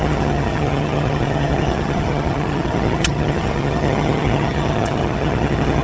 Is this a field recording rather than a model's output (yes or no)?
no